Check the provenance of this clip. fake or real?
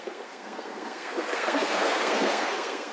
fake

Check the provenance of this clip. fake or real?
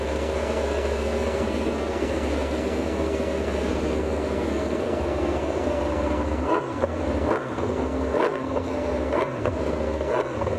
fake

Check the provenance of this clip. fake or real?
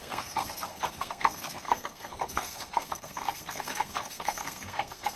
fake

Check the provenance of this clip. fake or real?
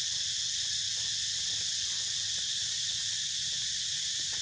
real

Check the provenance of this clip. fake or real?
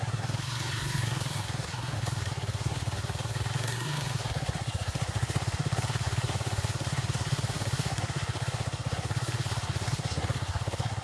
fake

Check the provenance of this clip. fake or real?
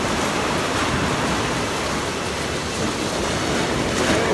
real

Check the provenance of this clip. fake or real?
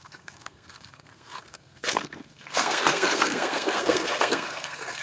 fake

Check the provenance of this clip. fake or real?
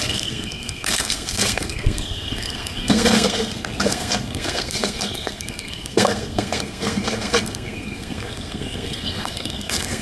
fake